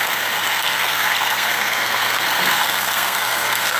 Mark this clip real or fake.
fake